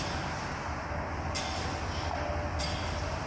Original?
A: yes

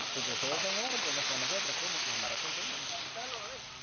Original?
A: yes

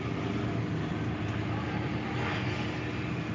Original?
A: yes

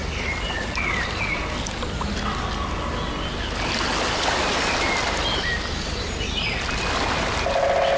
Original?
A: yes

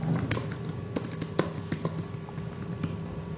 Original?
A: yes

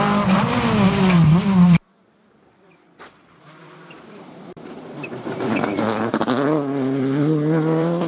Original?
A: no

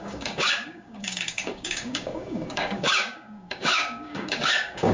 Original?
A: no